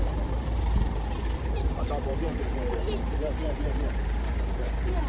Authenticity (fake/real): fake